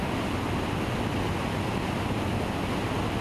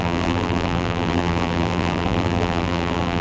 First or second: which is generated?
second